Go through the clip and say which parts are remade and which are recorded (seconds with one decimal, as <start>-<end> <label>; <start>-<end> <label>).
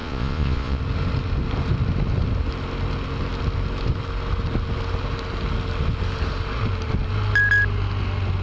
0.0-0.8 remade; 0.8-8.4 recorded